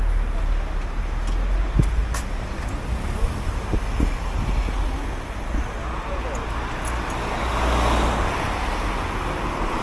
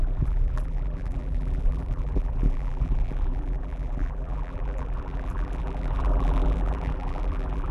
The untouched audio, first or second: first